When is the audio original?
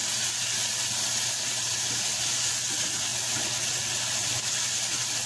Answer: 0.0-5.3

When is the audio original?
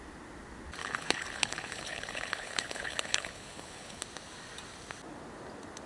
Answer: 0.0-0.8; 4.0-5.9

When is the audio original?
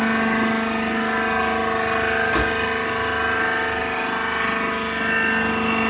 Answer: 0.0-5.9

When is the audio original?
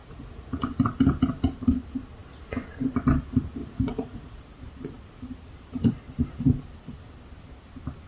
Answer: 0.6-3.6; 4.4-8.1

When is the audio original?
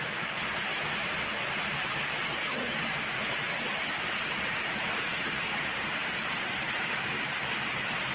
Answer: 0.7-3.7